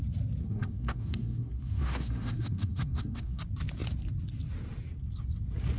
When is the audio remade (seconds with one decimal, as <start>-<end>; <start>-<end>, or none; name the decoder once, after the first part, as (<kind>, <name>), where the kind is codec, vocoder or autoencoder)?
0.4-3.4 (codec, SNAC)